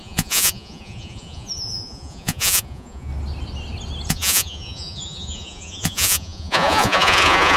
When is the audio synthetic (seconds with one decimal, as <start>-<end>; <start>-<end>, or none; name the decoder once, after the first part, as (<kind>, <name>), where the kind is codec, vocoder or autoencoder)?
0.0-3.1 (vocoder, Vocos); 4.1-7.6